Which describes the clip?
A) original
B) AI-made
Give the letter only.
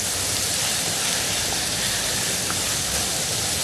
A